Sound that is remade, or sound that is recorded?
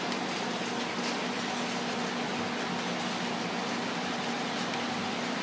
recorded